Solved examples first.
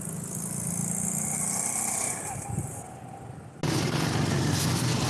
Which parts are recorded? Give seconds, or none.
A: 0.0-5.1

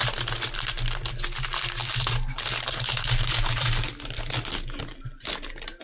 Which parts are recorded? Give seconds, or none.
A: 0.0-5.8